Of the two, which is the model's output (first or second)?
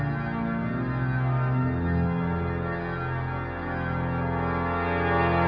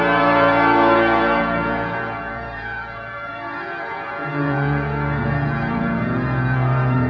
second